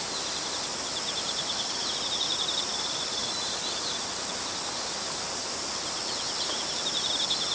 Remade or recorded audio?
recorded